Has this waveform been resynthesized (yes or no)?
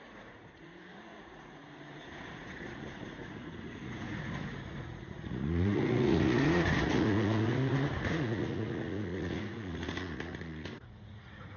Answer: yes